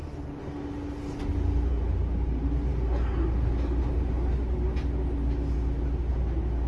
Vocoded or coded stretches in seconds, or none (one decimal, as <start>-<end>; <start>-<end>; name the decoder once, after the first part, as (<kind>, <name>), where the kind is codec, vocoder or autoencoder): none